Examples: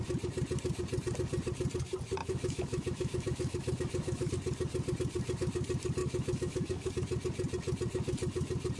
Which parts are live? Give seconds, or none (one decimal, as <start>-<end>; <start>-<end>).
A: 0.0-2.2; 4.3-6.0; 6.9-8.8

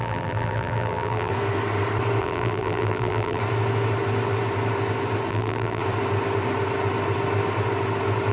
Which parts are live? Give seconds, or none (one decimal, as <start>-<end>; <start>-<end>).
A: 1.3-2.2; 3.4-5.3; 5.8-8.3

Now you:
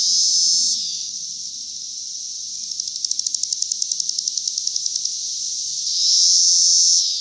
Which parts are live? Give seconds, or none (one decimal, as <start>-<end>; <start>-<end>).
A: 0.0-7.2

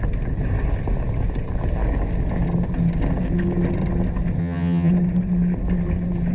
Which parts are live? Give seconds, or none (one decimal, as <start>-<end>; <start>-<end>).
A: 0.0-4.4; 4.9-6.3

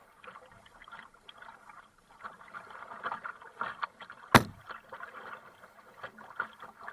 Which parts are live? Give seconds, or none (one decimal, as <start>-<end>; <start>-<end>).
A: 2.8-6.9

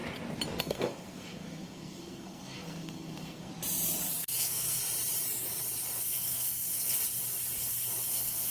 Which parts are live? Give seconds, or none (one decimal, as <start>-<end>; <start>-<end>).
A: 0.0-0.6; 3.5-4.2; 4.8-6.0; 7.0-8.1

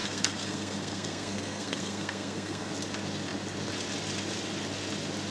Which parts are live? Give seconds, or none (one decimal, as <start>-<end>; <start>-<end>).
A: 2.7-5.3

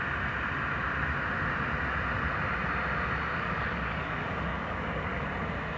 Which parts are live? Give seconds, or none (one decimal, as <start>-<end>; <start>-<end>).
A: 0.0-3.3; 5.3-5.8